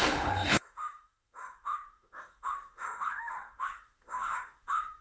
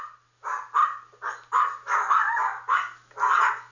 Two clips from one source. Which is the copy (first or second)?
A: first